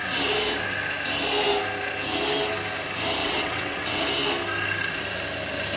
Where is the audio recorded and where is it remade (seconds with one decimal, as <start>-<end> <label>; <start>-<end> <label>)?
0.0-3.2 recorded; 3.2-4.0 remade; 4.0-5.8 recorded